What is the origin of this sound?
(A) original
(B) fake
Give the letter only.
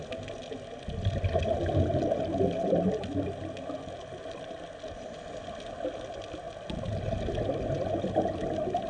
A